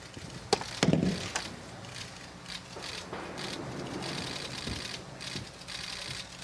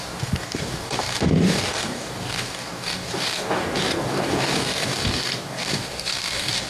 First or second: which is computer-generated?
second